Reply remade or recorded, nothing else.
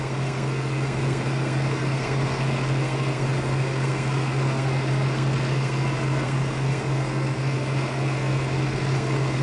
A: remade